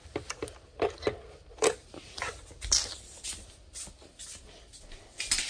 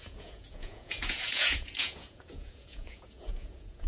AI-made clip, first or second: second